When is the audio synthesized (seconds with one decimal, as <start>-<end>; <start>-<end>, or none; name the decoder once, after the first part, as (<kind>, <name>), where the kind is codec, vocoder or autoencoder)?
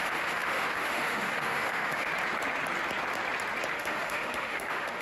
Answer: 0.0-2.1 (autoencoder, DAC-VAE); 3.7-5.0